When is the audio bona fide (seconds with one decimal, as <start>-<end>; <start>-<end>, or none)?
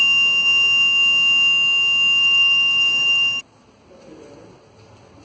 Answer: 0.0-2.2; 3.4-5.2